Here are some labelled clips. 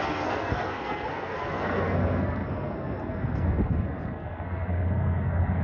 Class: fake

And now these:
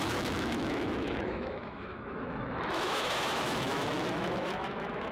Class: fake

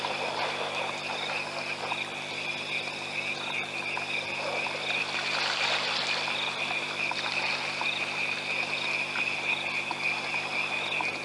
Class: real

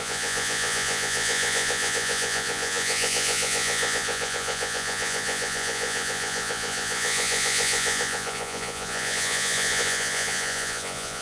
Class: fake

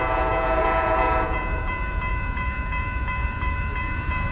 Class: fake